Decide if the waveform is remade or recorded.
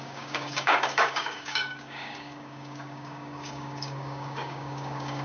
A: remade